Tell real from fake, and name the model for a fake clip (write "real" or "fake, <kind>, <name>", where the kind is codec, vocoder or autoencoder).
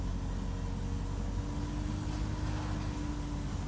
real